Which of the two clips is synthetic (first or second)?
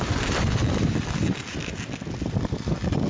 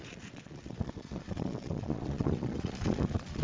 second